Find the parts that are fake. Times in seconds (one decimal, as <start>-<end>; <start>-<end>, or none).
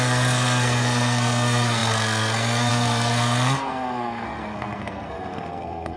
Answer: 0.0-6.0